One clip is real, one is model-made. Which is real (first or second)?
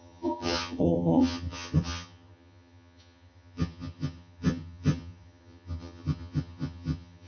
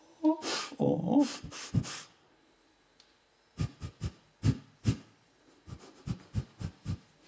second